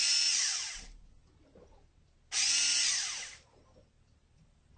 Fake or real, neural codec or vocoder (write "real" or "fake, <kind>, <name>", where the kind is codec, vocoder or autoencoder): real